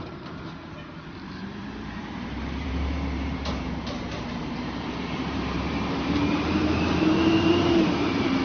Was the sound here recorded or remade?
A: remade